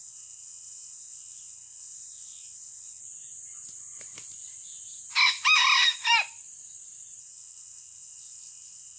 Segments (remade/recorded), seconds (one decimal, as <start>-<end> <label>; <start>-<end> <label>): 0.0-3.0 remade; 3.0-7.2 recorded; 7.2-9.0 remade